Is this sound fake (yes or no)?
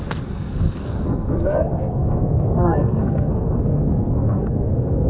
yes